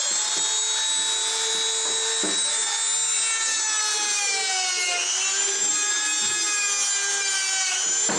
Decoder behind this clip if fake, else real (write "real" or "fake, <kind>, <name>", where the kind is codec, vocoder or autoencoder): real